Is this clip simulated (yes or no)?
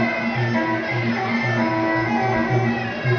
no